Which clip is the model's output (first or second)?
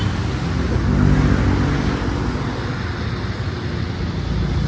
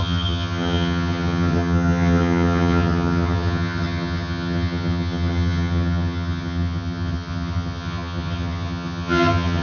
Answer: second